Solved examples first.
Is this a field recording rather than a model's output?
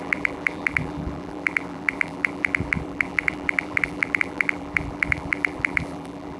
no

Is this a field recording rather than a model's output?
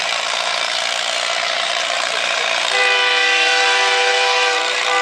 no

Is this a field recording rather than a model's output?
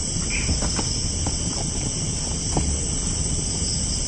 yes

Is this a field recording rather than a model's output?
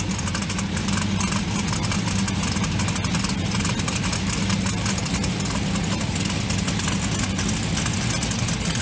yes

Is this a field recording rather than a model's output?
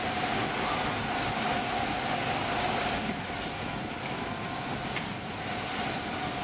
yes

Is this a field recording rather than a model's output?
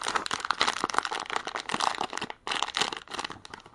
yes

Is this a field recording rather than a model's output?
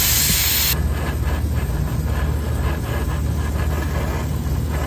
yes